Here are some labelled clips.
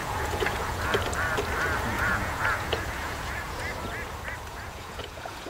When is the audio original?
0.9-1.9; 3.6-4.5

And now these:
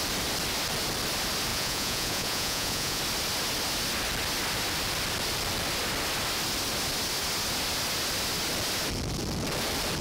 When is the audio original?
0.0-1.5; 3.0-10.0

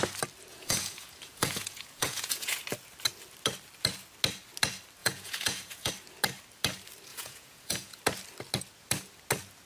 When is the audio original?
0.0-0.5; 2.6-5.0; 5.9-7.1; 8.0-9.7

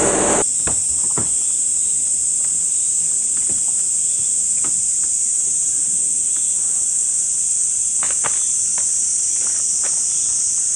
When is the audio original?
0.0-0.8; 1.4-10.8

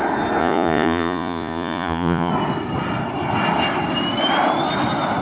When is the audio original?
0.0-0.4; 2.3-5.2

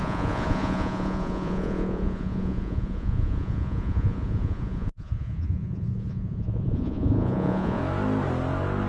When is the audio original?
7.8-8.9

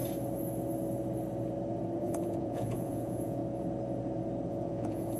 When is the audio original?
0.0-2.0; 3.4-4.5

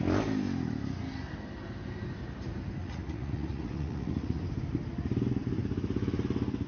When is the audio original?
0.0-2.8; 4.4-6.7